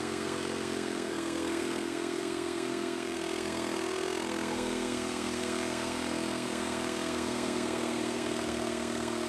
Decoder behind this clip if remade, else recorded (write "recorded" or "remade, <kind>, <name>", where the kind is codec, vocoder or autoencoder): remade, codec, SNAC